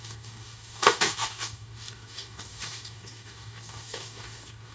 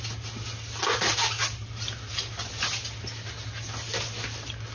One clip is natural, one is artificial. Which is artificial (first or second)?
first